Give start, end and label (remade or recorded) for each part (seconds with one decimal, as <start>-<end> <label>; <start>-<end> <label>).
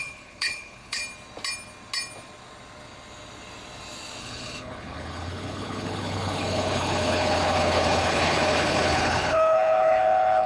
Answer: 0.0-1.0 remade; 1.0-4.2 recorded; 4.2-10.5 remade